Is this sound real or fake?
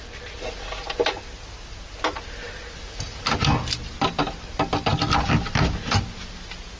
real